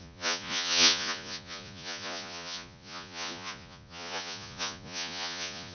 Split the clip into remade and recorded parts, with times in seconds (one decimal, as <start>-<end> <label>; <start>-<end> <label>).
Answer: 0.0-5.7 remade